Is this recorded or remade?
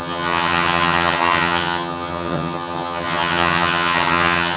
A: remade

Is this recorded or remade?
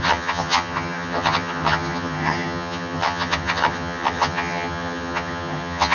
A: remade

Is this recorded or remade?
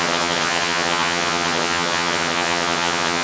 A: remade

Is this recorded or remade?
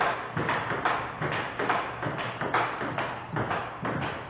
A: recorded